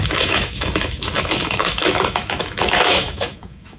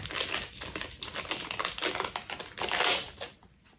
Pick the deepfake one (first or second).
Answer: first